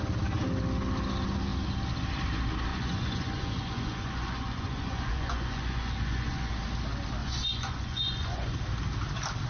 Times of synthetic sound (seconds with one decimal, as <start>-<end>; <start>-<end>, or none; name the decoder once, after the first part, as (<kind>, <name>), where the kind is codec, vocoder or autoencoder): 2.7-6.5 (vocoder, Vocos); 7.2-8.6